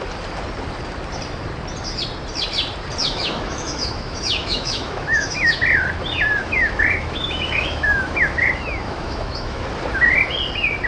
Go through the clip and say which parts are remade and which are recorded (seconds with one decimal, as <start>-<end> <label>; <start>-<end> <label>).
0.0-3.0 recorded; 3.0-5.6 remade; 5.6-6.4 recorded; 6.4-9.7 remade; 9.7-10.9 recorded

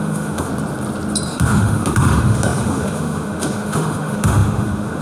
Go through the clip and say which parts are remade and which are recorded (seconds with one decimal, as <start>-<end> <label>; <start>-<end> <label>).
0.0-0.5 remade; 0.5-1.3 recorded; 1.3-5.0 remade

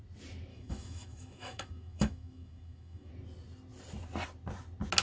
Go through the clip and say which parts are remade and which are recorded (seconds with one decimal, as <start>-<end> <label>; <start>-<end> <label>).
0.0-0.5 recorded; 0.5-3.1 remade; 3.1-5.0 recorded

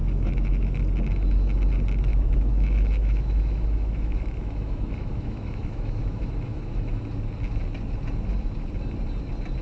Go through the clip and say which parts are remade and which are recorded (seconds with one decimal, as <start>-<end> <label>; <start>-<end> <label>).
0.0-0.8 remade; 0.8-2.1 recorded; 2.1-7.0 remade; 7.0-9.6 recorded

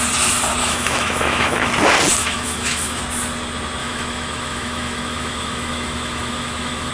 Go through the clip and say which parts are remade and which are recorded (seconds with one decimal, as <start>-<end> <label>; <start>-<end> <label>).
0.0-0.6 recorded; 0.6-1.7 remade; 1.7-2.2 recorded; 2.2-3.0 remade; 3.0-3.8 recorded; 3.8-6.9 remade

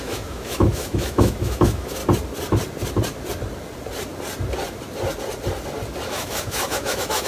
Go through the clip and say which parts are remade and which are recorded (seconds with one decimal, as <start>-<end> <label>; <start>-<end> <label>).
0.0-2.0 remade; 2.0-6.1 recorded; 6.1-7.3 remade

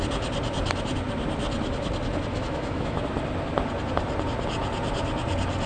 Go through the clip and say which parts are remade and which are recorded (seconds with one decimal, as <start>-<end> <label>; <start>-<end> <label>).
0.0-2.3 recorded; 2.3-3.0 remade; 3.0-5.7 recorded

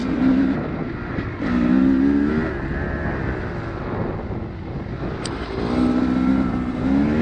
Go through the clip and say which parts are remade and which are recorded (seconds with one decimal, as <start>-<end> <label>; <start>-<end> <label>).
0.0-7.2 recorded